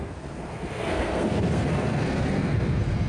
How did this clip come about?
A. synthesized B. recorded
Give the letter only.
A